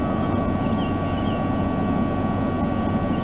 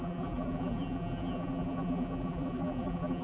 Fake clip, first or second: second